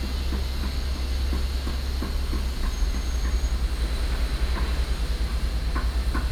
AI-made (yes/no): no